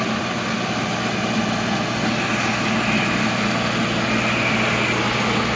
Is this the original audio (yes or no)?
yes